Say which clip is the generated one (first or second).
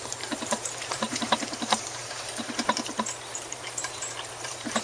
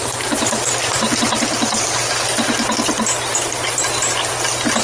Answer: first